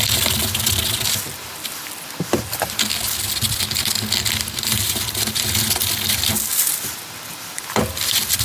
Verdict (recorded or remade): recorded